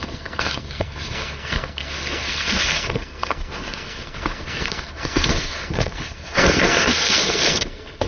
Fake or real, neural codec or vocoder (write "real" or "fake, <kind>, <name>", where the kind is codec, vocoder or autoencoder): fake, codec, SNAC